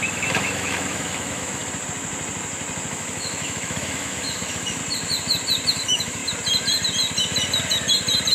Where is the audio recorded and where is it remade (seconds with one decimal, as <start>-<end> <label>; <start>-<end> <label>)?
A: 0.0-1.6 remade; 1.6-2.9 recorded; 2.9-4.8 remade; 4.8-5.7 recorded; 5.7-6.2 remade; 6.2-8.3 recorded